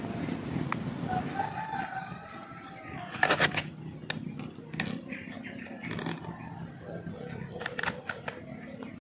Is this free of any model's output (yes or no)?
yes